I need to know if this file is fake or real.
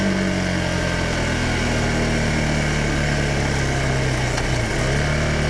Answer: real